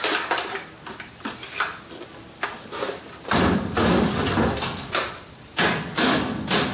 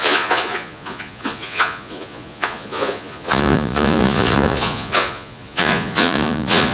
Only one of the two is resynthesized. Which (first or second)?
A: second